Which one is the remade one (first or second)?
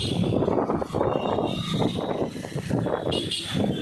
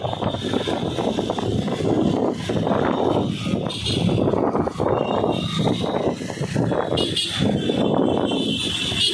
first